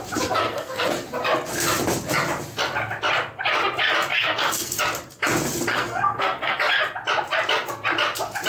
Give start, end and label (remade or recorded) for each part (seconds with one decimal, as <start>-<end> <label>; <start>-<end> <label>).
0.0-0.4 recorded; 0.4-0.9 remade; 0.9-4.1 recorded; 4.1-4.8 remade; 4.8-5.7 recorded; 5.7-6.6 remade; 6.6-8.5 recorded